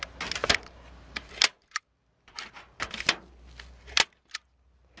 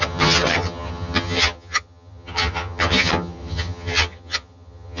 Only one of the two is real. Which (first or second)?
first